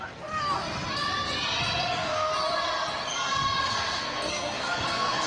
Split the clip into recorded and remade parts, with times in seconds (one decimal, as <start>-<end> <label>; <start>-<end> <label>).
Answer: 0.0-0.6 remade; 0.6-1.9 recorded; 1.9-2.3 remade; 2.3-3.6 recorded; 3.6-5.3 remade